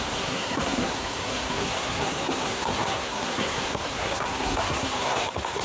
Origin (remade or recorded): remade